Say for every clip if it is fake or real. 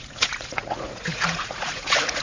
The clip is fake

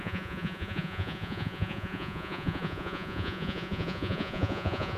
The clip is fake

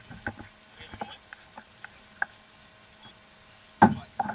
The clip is real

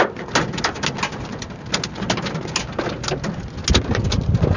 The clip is real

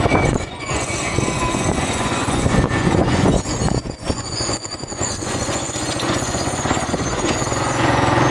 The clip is fake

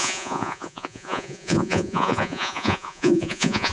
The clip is fake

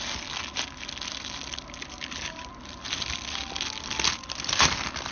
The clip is real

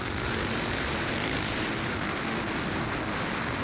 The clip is real